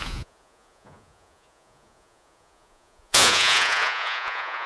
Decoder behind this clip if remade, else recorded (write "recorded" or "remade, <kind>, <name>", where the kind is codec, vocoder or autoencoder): remade, vocoder, Vocos